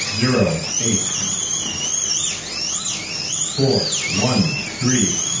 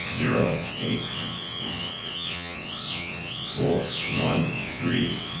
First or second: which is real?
first